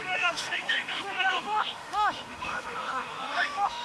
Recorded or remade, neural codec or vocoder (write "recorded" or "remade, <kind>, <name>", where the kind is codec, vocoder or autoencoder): remade, autoencoder, DAC-VAE